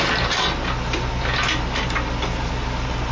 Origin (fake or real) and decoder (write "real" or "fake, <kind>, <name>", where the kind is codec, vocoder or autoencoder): real